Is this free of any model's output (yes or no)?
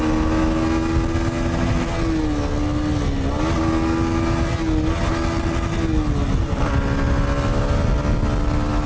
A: yes